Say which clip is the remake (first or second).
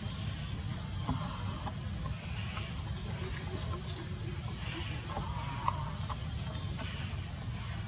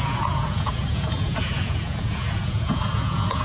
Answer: second